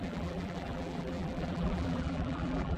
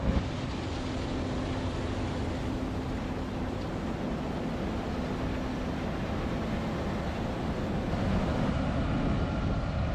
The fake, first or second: first